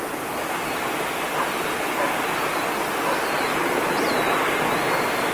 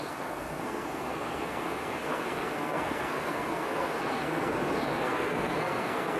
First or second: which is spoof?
second